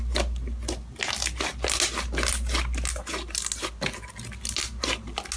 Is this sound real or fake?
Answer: real